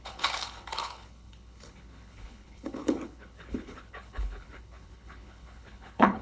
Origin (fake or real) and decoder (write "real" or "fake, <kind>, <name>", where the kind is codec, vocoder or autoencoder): fake, codec, HILCodec